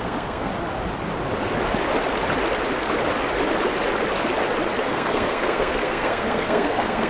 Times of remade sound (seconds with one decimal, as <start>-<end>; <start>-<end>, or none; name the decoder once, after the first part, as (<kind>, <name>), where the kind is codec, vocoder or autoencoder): 0.0-0.5 (codec, SNAC); 4.8-7.1